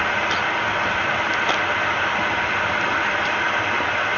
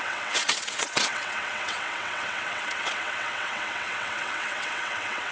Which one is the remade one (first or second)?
second